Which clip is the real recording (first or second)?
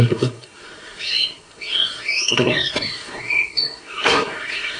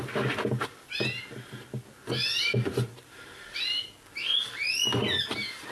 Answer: second